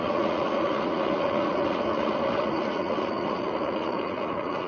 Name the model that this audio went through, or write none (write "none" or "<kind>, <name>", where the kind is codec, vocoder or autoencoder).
vocoder, Vocos